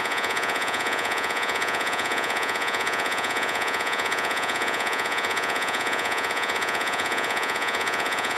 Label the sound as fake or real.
fake